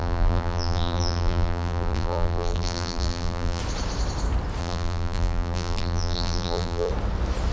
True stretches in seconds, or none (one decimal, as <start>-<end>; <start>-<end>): 3.6-4.6; 6.9-7.5